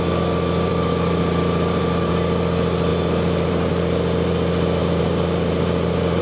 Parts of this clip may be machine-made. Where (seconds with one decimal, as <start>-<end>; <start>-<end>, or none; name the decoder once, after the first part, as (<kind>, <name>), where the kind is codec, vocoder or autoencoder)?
0.7-2.1 (vocoder, BigVGAN v2); 2.9-3.7; 4.8-6.2